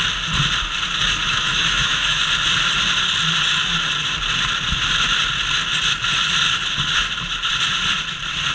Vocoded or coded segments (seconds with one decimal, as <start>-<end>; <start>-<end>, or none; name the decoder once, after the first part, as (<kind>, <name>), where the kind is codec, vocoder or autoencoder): 1.3-2.2 (autoencoder, DAC-VAE)